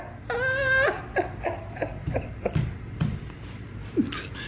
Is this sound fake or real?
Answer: real